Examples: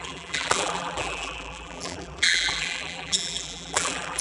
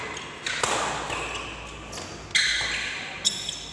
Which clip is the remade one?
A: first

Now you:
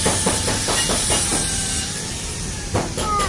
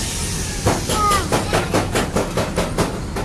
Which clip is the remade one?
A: first